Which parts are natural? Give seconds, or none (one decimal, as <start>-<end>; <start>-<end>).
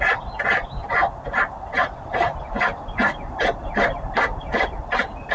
0.0-5.3